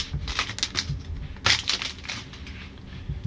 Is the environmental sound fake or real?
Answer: real